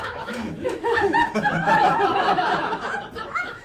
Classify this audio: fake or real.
fake